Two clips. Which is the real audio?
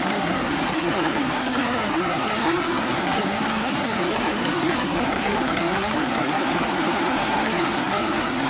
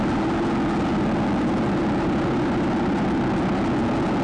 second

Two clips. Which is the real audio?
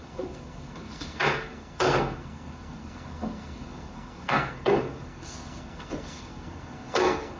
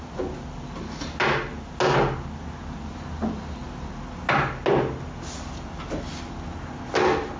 second